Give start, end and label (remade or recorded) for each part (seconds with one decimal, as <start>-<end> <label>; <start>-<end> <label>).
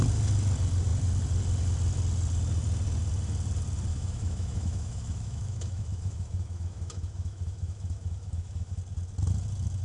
0.0-3.9 recorded; 3.9-8.8 remade; 8.8-9.8 recorded